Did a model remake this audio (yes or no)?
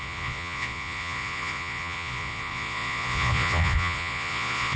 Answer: yes